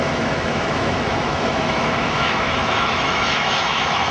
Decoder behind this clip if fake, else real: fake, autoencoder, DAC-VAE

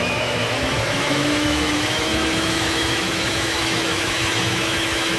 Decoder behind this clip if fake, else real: fake, autoencoder, DAC-VAE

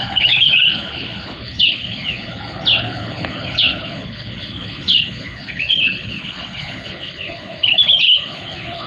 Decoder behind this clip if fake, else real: fake, codec, HILCodec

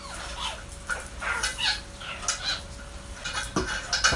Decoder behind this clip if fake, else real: real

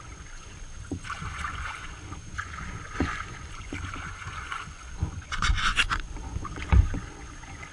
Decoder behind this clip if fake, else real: fake, vocoder, Vocos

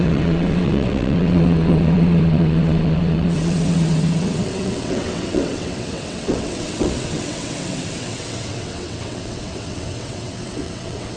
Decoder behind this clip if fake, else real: fake, vocoder, WaveNeXt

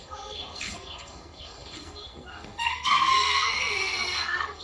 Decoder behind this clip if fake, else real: fake, codec, SNAC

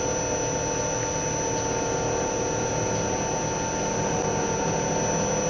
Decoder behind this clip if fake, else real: real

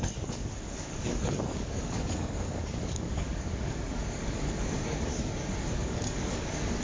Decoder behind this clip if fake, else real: fake, codec, DAC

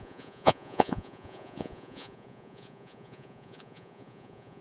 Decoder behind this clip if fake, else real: fake, vocoder, Vocos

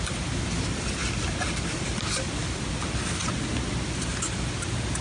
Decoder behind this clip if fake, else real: real